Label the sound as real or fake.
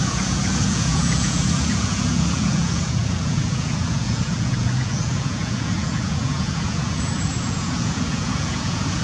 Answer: fake